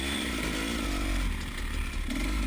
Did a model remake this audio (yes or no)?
no